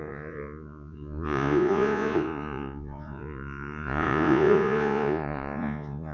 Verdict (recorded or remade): remade